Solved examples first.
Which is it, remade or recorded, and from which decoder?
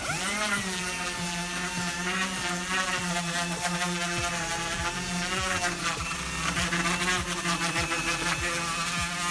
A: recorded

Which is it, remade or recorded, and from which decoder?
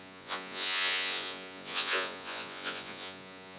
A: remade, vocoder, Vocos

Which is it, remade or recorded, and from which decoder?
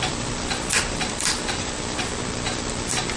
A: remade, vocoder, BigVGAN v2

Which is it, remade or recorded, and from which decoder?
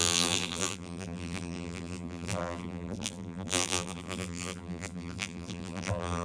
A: remade, vocoder, BigVGAN v2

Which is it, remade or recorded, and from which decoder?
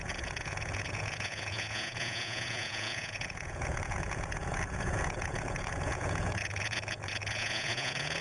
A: remade, vocoder, Vocos